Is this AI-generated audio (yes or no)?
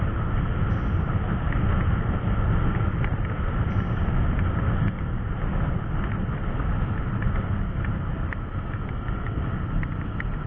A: no